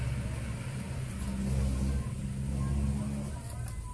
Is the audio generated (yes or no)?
no